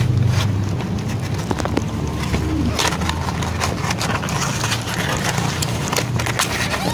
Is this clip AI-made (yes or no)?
no